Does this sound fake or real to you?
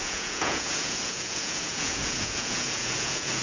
fake